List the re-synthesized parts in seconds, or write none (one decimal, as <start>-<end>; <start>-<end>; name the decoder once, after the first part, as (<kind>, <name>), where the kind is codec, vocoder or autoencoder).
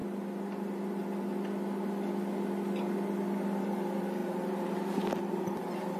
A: 3.6-4.2 (vocoder, BigVGAN v2); 5.4-6.0